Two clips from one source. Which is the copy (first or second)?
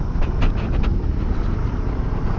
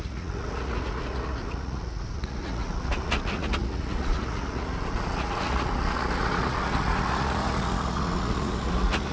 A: second